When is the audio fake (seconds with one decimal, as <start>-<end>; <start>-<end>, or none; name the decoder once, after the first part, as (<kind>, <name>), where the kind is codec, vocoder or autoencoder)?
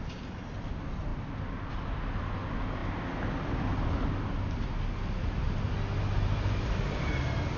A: none